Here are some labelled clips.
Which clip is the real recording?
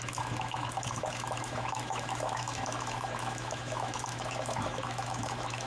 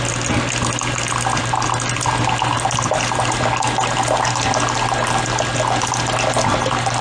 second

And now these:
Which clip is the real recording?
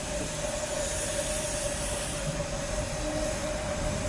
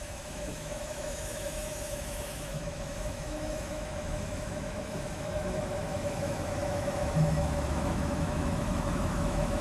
first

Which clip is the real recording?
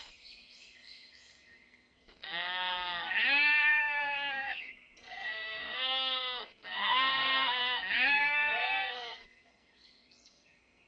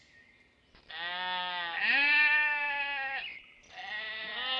second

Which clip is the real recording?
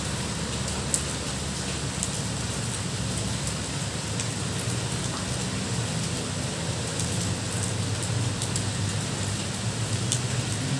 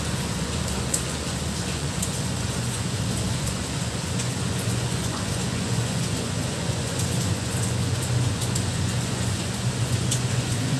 first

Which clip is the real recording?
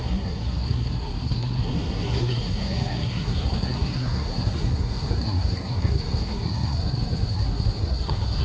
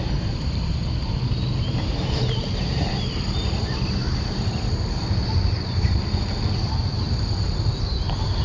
second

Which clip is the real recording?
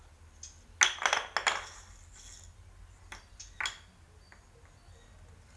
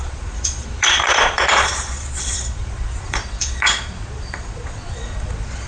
first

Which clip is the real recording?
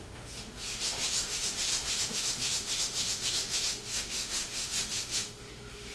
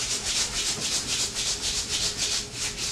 second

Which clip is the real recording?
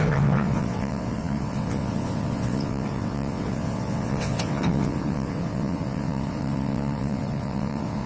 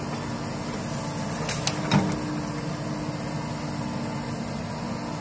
second